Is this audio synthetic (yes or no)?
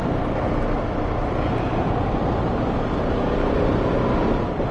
no